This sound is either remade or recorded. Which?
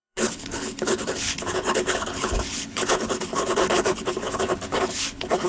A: remade